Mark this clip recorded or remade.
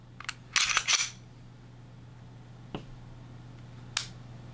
recorded